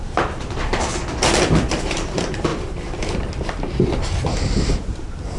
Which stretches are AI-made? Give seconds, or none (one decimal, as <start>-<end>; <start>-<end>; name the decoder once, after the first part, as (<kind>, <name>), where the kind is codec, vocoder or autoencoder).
0.0-0.7 (vocoder, BigVGAN v2); 1.7-2.5; 4.7-5.4